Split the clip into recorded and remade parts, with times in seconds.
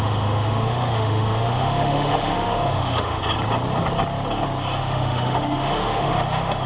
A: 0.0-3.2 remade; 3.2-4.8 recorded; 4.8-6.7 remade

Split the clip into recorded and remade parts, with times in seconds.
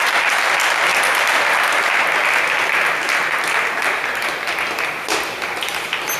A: 0.0-6.2 recorded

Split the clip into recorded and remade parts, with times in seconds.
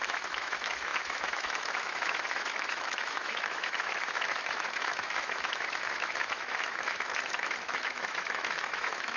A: 0.0-9.2 remade